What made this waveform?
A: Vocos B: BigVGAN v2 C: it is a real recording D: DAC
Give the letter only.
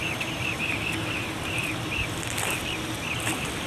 C